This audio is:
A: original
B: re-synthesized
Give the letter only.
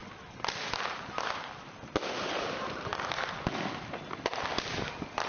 A